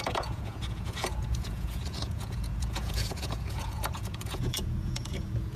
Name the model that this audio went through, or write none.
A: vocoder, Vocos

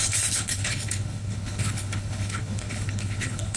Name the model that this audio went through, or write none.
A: codec, HILCodec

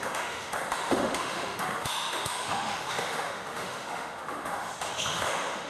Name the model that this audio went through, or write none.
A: autoencoder, DAC-VAE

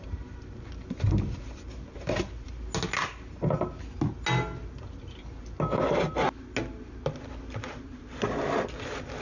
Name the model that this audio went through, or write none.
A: none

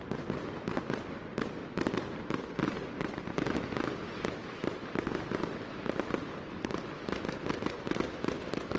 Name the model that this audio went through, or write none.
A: none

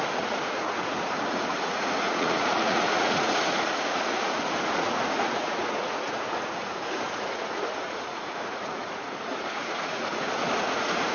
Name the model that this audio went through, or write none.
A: vocoder, Vocos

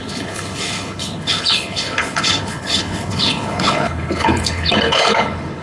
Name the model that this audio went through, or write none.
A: codec, HILCodec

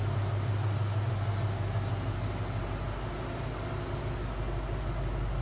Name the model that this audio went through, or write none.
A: none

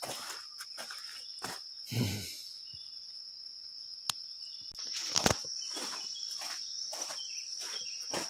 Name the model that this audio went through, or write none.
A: none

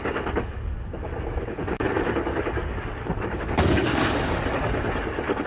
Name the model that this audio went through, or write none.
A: codec, DAC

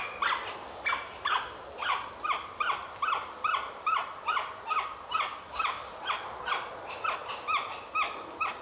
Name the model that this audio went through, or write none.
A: none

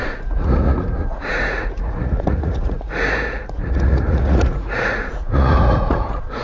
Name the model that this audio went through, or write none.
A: vocoder, Vocos